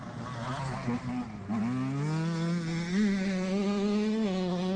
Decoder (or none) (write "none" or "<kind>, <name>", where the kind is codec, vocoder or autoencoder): none